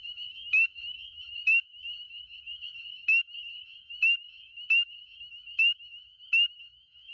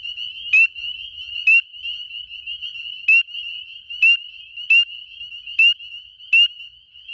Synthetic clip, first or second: first